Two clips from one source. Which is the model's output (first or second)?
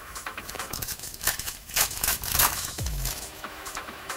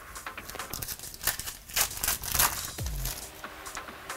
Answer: first